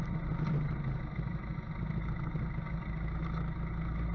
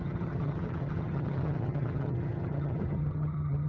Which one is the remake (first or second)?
second